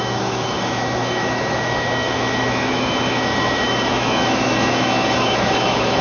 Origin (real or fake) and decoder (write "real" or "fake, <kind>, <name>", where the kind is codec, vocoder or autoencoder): fake, autoencoder, DAC-VAE